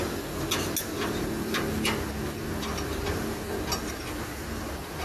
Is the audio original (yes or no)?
yes